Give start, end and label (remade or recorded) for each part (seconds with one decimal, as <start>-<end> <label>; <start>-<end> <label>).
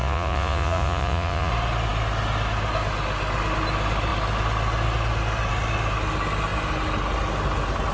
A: 0.0-1.5 remade; 1.5-7.9 recorded